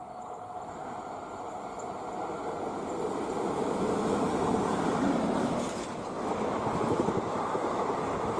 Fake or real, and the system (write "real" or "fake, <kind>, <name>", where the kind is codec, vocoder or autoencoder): real